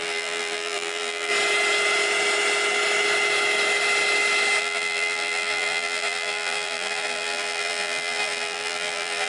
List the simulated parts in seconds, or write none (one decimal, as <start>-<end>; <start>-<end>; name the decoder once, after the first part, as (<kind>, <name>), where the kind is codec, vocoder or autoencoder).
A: 0.0-1.3 (vocoder, BigVGAN v2); 4.6-9.3